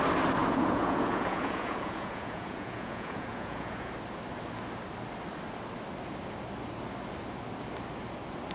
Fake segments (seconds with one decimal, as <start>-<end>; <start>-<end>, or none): 0.4-3.9

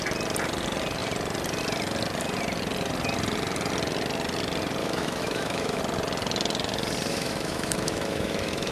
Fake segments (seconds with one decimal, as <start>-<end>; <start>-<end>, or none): 4.8-5.8; 7.1-8.7

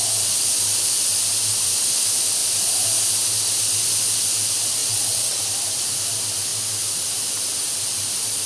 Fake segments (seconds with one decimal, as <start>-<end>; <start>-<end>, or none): 4.8-5.4

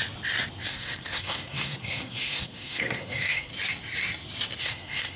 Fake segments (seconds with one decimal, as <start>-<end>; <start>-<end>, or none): 0.7-3.5; 4.6-5.2

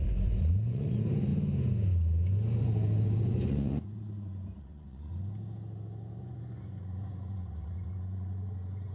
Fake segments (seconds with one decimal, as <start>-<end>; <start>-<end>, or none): 0.0-1.3; 2.6-5.1; 6.2-8.9

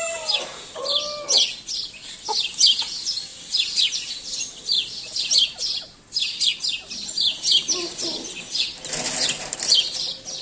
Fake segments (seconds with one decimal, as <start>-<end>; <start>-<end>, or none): 3.3-4.1

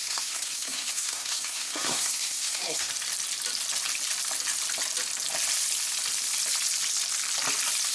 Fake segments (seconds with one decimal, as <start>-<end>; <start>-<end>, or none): 0.0-2.9

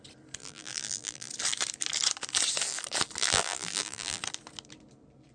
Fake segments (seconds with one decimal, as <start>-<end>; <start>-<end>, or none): 0.4-1.3; 3.2-4.2